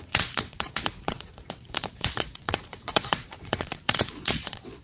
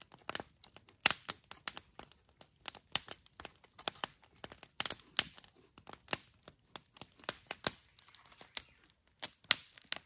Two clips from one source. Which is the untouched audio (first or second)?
second